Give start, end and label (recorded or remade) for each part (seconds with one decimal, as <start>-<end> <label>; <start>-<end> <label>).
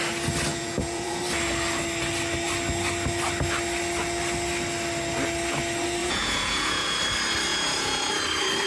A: 0.0-0.5 recorded; 0.5-1.2 remade; 1.2-6.0 recorded; 6.0-7.0 remade; 7.0-7.5 recorded; 7.5-8.1 remade; 8.1-8.7 recorded